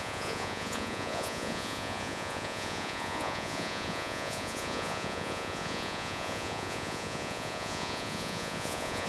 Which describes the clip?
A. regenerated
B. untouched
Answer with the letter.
A